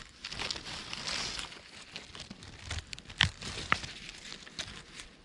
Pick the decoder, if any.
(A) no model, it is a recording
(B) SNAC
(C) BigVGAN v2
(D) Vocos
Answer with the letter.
A